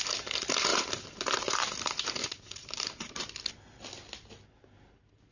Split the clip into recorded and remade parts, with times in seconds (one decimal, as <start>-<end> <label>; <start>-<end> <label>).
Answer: 0.0-0.7 recorded; 0.7-3.5 remade; 3.5-5.3 recorded